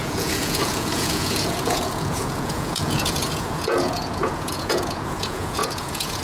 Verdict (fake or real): fake